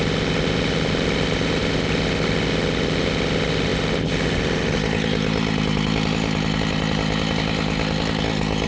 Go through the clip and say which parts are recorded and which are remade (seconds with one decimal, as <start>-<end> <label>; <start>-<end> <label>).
0.0-8.7 recorded